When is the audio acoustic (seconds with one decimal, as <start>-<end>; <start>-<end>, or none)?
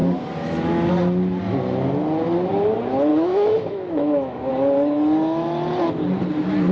0.0-3.1; 4.5-6.7